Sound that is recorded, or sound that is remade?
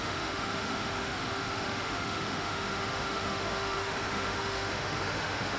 remade